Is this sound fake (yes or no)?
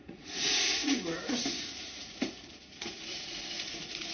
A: yes